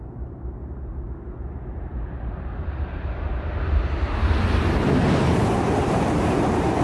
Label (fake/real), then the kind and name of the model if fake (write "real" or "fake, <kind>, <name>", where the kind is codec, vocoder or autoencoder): fake, vocoder, BigVGAN v2